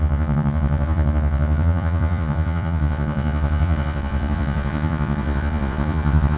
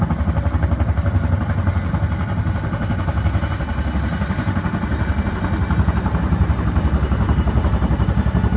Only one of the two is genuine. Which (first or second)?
second